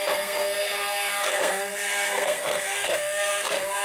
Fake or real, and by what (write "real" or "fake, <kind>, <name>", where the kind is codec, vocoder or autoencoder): fake, codec, SNAC